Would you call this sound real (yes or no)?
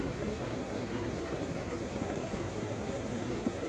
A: no